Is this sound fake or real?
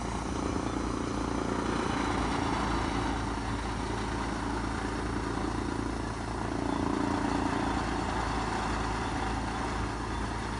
real